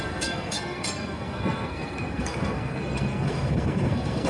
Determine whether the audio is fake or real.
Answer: fake